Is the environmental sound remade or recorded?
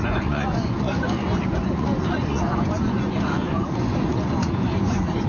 remade